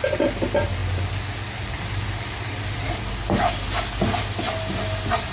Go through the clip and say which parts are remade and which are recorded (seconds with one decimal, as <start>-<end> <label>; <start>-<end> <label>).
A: 0.0-5.3 recorded